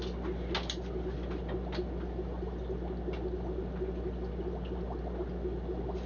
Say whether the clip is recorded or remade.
recorded